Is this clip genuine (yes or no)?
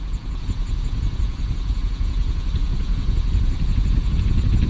no